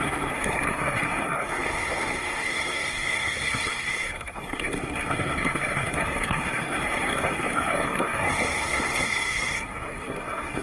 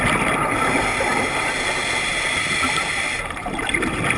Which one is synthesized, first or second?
first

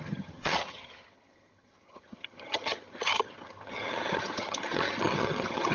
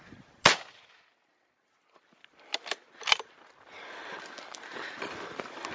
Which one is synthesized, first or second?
first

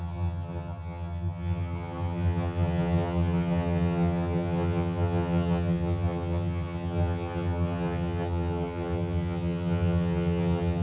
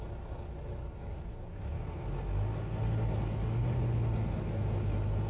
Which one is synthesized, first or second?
first